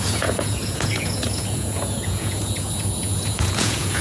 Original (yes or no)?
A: no